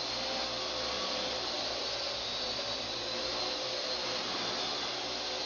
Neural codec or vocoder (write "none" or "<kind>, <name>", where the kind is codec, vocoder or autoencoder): none